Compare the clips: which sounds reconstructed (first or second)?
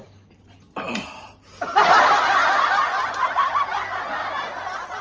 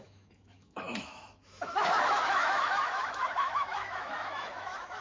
second